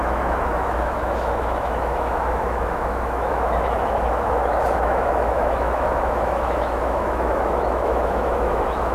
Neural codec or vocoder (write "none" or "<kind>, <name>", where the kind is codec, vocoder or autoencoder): autoencoder, DAC-VAE